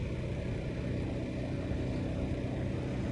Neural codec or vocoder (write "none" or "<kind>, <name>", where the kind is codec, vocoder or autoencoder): none